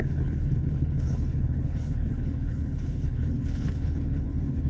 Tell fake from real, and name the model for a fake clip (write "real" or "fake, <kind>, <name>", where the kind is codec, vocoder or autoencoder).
fake, codec, HILCodec